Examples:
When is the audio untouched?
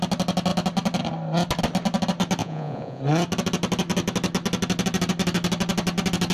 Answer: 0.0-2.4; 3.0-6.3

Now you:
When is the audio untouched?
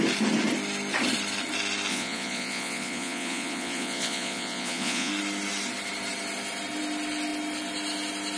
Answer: 0.0-1.9; 5.1-8.4